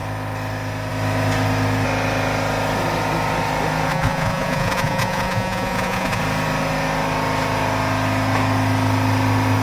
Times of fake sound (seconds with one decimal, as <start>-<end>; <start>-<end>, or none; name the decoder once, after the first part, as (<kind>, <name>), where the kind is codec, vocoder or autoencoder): 3.9-6.2 (vocoder, Vocos)